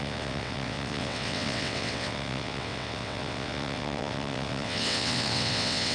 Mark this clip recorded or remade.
remade